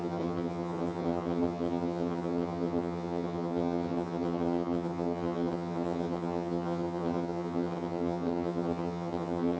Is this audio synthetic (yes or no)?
yes